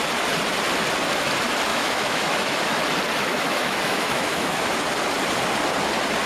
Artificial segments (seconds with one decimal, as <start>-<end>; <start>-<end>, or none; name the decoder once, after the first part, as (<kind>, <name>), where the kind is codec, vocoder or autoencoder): 1.7-2.8 (autoencoder, DAC-VAE); 3.3-4.6